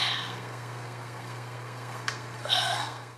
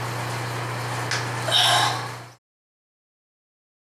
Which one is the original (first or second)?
second